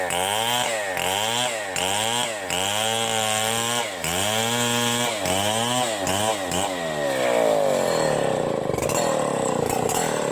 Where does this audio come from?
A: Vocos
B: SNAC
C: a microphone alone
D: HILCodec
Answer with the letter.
C